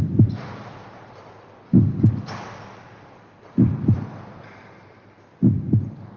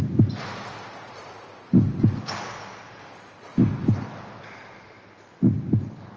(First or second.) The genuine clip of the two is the second